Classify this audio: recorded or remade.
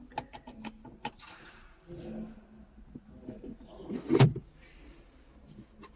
recorded